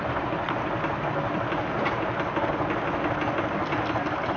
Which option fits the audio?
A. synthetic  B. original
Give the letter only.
B